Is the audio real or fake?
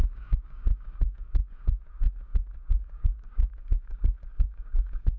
fake